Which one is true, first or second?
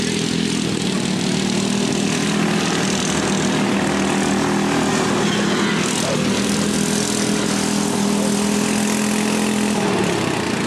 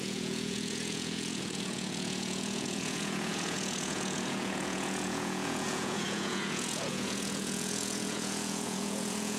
first